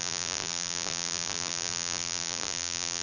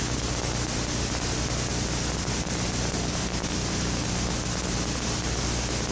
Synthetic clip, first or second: first